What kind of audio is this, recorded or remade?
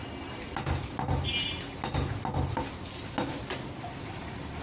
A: recorded